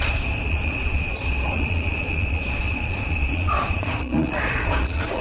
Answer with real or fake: fake